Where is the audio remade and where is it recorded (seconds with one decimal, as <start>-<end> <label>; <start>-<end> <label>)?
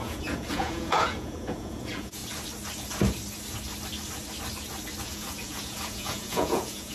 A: 0.0-2.2 remade; 2.2-5.0 recorded; 5.0-6.9 remade